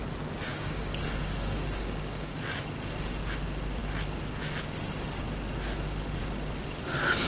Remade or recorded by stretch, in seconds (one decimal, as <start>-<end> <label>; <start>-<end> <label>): 0.0-0.5 recorded; 0.5-2.4 remade; 2.4-7.3 recorded